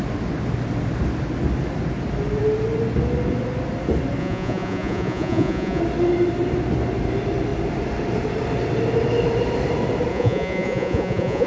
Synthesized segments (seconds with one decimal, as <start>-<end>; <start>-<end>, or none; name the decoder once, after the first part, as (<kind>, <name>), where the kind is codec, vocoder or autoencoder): 4.2-5.8 (vocoder, Vocos); 10.1-11.5